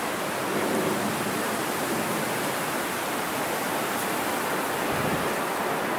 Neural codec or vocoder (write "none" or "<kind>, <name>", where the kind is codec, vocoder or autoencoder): none